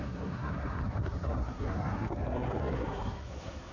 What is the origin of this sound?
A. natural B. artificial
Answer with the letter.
B